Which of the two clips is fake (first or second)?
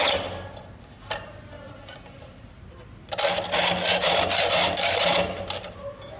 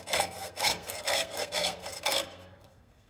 second